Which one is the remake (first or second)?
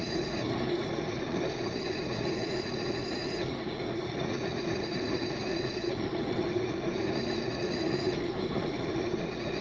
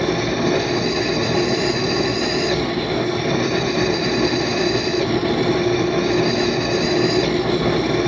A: first